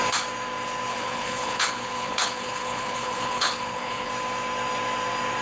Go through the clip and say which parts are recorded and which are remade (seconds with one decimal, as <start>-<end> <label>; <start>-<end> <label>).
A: 0.0-0.9 recorded; 0.9-4.1 remade; 4.1-5.4 recorded